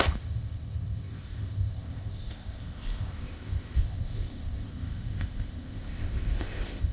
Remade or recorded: remade